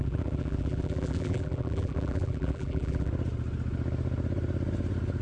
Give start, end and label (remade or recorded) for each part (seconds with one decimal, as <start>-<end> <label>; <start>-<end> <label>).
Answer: 0.0-3.1 remade; 3.1-5.2 recorded